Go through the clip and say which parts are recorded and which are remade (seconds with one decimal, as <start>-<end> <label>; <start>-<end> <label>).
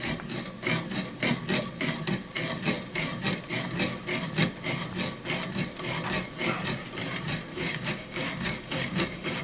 0.0-7.5 recorded; 7.5-9.4 remade